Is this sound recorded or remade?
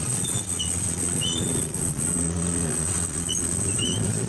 remade